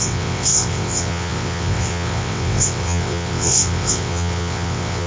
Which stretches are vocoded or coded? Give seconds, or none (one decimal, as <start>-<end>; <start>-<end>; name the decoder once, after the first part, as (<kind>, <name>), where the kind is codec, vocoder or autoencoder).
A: 0.0-5.1 (vocoder, WaveNeXt)